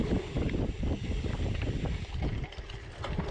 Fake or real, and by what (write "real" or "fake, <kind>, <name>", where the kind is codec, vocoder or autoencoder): real